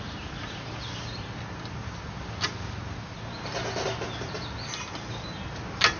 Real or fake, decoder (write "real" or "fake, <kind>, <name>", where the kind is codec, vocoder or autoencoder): real